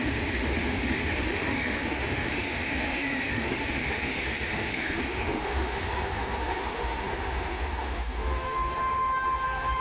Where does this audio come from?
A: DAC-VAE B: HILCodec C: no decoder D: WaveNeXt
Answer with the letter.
A